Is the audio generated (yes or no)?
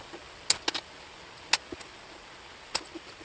no